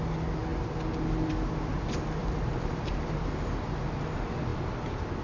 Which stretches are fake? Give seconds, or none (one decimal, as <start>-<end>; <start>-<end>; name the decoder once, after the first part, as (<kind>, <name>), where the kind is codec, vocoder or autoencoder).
2.2-3.4 (vocoder, BigVGAN v2)